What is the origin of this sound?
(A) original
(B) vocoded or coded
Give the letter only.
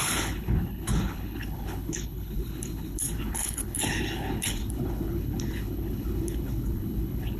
B